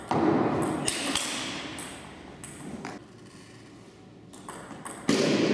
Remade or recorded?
recorded